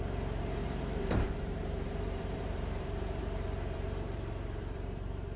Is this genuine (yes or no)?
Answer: no